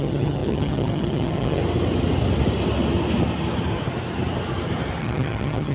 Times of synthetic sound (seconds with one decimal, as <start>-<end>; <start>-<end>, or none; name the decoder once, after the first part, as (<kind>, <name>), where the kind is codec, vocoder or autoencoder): 0.0-1.6 (vocoder, HiFi-GAN); 5.0-5.7